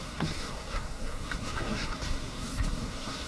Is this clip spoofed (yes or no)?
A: yes